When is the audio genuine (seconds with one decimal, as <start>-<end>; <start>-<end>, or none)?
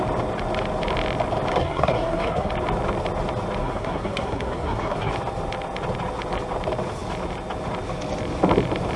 0.0-1.5; 2.5-3.6; 5.1-9.0